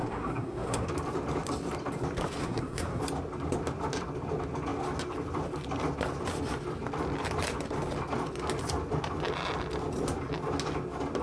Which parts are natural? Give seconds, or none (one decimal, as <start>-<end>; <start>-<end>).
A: 0.9-2.4; 3.0-11.2